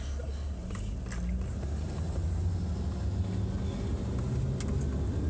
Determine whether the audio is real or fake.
real